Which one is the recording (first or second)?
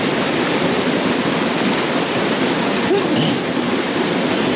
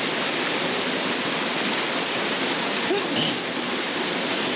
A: second